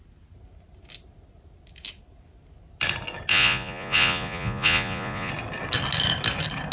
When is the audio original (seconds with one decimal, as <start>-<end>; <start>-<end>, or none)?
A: 0.0-3.3; 5.3-6.7